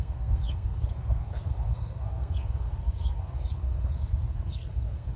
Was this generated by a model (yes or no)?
yes